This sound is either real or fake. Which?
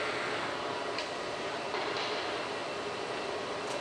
real